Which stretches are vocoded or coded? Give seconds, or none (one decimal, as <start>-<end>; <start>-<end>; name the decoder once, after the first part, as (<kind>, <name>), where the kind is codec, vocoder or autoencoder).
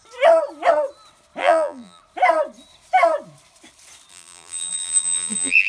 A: 1.4-2.0 (vocoder, BigVGAN v2); 4.1-5.7